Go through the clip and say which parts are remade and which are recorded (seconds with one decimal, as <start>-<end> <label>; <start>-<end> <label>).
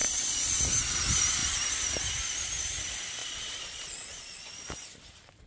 0.0-0.6 remade; 0.6-3.2 recorded; 3.2-4.5 remade; 4.5-5.5 recorded